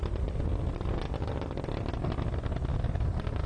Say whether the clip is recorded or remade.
recorded